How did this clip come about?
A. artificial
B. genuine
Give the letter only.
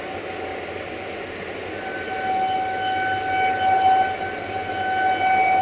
B